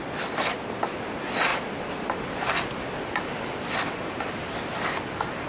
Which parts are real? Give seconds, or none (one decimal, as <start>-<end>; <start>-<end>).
0.0-1.5; 4.3-5.5

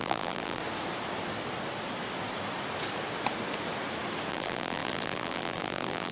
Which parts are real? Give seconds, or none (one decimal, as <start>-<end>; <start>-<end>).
0.6-4.3

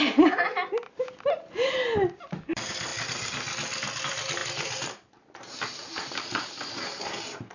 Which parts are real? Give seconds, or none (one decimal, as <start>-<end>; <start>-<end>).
0.0-4.4; 7.0-7.5

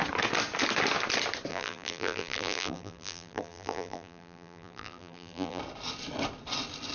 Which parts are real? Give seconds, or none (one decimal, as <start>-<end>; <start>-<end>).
0.0-1.5; 5.6-6.9

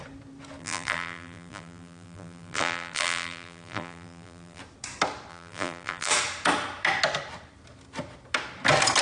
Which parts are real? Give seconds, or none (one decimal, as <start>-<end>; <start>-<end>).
0.0-0.6; 4.6-5.3; 6.1-9.0